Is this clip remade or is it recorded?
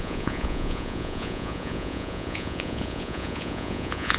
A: remade